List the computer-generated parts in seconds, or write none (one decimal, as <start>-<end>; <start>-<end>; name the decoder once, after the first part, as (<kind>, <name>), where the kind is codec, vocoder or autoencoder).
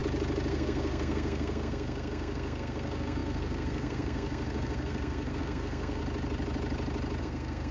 0.5-6.0 (codec, SNAC); 7.2-7.7